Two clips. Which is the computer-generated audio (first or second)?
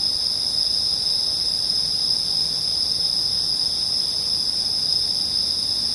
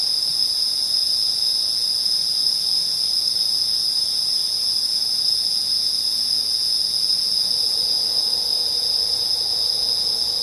second